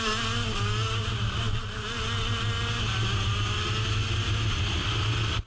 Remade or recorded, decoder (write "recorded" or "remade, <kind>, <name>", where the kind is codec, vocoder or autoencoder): recorded